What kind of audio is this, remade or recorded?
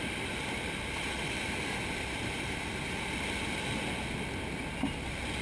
recorded